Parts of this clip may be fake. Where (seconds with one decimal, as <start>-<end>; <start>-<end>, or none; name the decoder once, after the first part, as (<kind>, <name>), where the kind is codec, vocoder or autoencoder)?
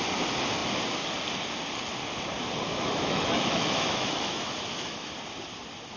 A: 2.7-5.1 (autoencoder, DAC-VAE)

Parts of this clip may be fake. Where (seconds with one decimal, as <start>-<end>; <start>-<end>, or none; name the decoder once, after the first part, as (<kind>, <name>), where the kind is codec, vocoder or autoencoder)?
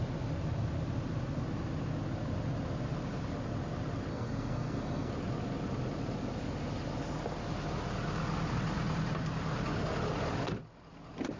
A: 4.1-5.1 (codec, SNAC)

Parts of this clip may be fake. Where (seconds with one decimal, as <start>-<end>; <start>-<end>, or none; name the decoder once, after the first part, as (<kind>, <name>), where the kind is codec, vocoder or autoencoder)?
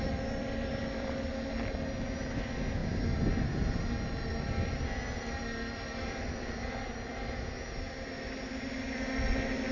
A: 0.4-1.2 (vocoder, BigVGAN v2); 4.3-7.3